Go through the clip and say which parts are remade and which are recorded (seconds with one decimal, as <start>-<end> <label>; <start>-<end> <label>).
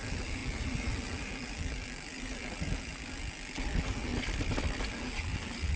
0.0-4.1 remade; 4.1-4.8 recorded; 4.8-5.8 remade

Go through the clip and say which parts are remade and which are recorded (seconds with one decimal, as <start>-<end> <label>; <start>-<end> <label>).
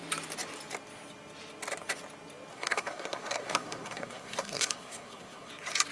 0.0-2.5 recorded; 2.5-5.5 remade; 5.5-5.9 recorded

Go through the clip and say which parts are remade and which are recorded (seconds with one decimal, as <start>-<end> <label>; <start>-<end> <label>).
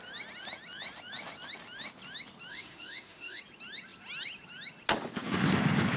0.0-2.5 recorded; 2.5-3.4 remade; 3.4-6.0 recorded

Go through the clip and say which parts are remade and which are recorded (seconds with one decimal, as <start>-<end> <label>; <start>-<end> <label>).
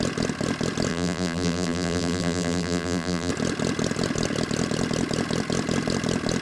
0.0-0.9 recorded; 0.9-3.3 remade; 3.3-6.4 recorded